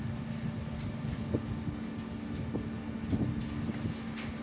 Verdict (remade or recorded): recorded